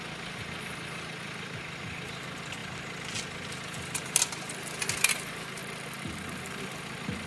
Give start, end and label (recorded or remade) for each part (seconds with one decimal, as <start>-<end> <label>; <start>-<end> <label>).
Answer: 0.0-7.3 recorded